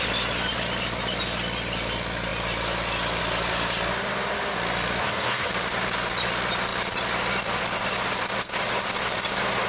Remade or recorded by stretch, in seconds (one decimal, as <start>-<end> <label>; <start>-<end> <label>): 0.0-5.0 recorded; 5.0-5.5 remade; 5.5-9.7 recorded